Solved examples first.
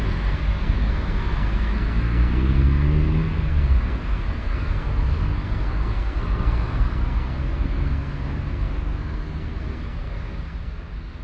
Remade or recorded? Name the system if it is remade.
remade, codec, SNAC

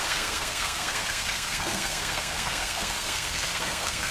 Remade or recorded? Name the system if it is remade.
remade, codec, SNAC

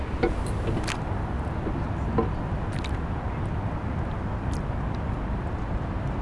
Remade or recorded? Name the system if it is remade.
recorded